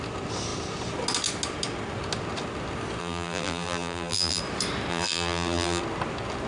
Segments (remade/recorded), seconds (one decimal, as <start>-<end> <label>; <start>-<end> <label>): 0.0-3.0 recorded; 3.0-4.4 remade; 4.4-4.9 recorded; 4.9-5.8 remade; 5.8-6.5 recorded

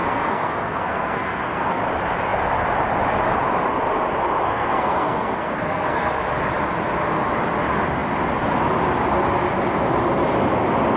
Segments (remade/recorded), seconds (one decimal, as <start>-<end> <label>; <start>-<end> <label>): 0.0-1.8 remade; 1.8-4.5 recorded; 4.5-6.1 remade; 6.1-11.0 recorded

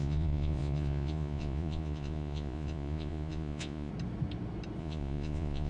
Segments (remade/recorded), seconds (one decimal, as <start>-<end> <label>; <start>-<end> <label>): 0.0-3.9 remade; 3.9-4.8 recorded; 4.8-5.7 remade

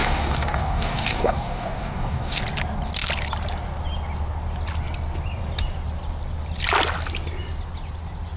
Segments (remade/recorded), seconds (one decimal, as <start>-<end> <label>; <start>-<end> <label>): 0.0-2.4 remade; 2.4-8.4 recorded

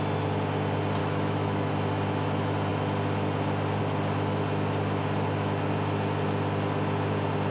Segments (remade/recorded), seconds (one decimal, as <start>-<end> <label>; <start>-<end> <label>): 0.0-1.0 recorded; 1.0-1.7 remade; 1.7-7.5 recorded

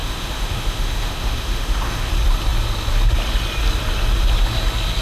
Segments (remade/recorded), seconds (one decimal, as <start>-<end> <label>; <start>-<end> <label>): 0.0-2.1 remade; 2.1-5.0 recorded

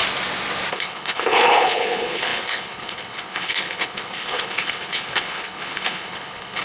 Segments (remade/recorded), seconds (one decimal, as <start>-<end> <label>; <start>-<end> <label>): 0.0-0.7 recorded; 0.7-6.6 remade

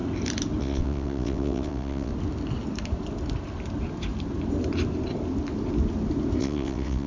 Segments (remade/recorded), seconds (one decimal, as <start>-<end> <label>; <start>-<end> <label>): 0.0-0.6 recorded; 0.6-2.1 remade; 2.1-6.4 recorded; 6.4-7.1 remade